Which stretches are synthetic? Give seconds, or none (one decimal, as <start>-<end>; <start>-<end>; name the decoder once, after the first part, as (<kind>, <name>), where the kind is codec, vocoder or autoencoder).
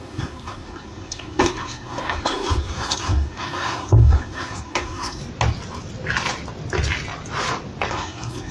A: 0.0-5.2 (codec, SNAC); 7.9-8.5